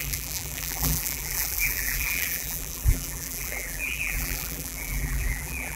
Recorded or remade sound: remade